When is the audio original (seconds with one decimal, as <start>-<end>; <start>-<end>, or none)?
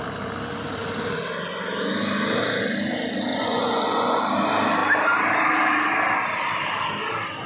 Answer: 0.0-3.3; 4.2-7.5